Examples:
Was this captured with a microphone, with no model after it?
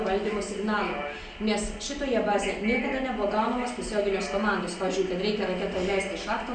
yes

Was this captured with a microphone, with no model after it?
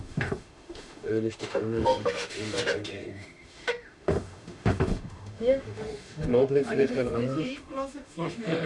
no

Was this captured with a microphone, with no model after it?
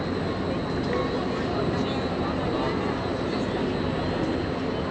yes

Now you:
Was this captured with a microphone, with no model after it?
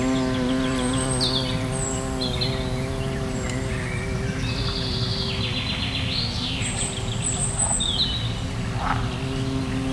yes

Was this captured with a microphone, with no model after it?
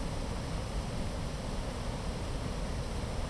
yes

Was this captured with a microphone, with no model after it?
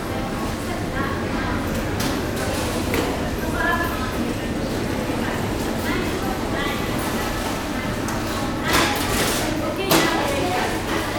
yes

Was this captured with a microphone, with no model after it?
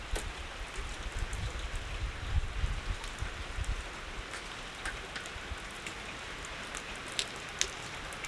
yes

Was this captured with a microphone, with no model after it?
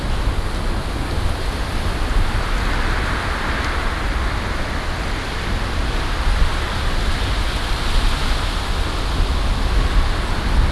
yes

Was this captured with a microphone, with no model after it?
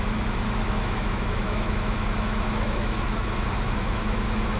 no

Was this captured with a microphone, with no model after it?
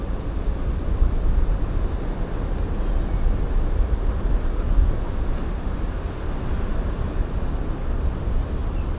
yes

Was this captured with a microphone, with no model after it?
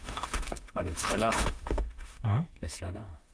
no